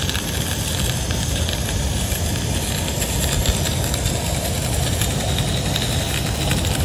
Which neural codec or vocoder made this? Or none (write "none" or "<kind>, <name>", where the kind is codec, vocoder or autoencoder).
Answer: none